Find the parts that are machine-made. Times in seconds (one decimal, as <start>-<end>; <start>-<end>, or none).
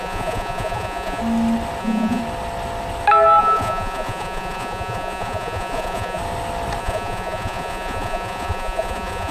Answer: 0.0-1.2; 1.8-2.2; 3.4-6.2; 6.8-9.3